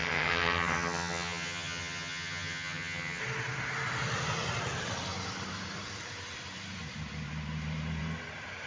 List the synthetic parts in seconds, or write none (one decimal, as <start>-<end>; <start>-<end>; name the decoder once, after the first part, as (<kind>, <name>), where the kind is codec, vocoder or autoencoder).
0.0-3.2 (vocoder, HiFi-GAN)